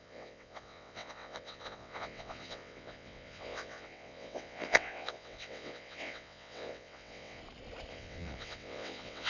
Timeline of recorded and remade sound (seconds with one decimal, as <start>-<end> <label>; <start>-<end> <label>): 0.0-7.4 remade; 7.4-7.9 recorded; 7.9-9.3 remade